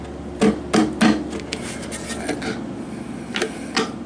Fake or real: real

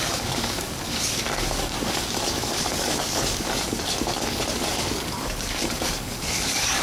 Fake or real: fake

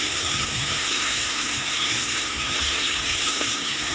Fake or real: fake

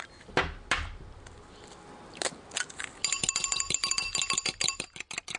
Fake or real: real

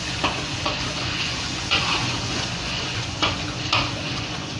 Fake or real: fake